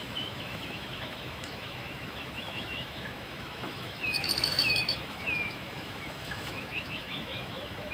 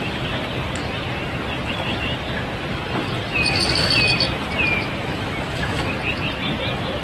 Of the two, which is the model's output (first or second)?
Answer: first